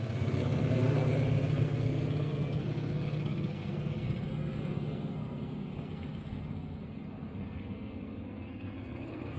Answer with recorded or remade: remade